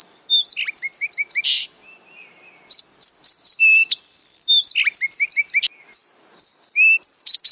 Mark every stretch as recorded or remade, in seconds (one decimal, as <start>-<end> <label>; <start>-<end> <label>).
0.0-7.5 recorded